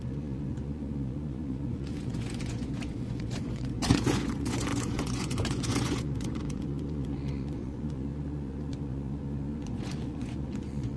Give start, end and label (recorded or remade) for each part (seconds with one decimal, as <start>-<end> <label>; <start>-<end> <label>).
0.0-11.0 remade